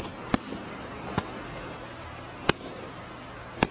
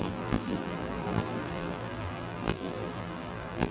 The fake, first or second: second